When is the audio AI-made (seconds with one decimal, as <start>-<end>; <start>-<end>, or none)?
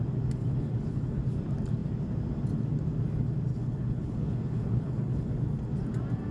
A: 0.4-1.2; 3.5-5.3